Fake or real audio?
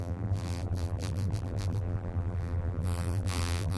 fake